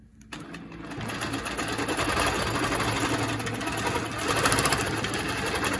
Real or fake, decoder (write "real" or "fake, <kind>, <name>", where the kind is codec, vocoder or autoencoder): real